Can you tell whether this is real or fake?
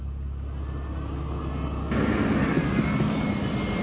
real